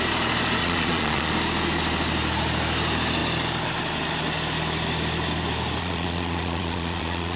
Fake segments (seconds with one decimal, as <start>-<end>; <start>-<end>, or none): 0.6-1.3; 5.8-7.4